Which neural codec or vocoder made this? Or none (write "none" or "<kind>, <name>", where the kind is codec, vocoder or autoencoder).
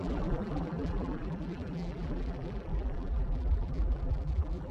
vocoder, BigVGAN v2